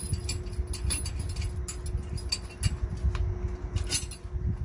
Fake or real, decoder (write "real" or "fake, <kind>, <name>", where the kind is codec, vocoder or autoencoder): real